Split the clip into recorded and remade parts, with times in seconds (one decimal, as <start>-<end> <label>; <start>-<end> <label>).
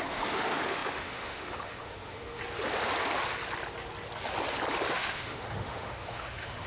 0.0-2.4 remade; 2.4-4.9 recorded; 4.9-6.7 remade